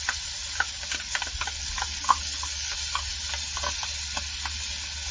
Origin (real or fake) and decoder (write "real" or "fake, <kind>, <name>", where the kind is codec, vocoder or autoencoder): real